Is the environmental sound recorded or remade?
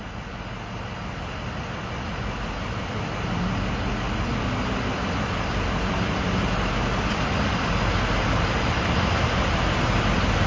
recorded